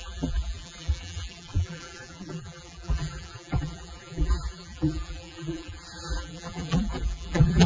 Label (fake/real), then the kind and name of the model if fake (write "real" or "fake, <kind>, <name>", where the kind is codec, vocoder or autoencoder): fake, vocoder, BigVGAN v2